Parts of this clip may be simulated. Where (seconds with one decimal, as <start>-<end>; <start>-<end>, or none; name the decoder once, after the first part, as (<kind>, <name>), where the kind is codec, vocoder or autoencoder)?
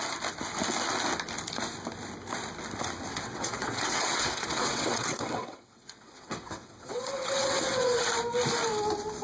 3.1-8.1 (vocoder, WaveNeXt)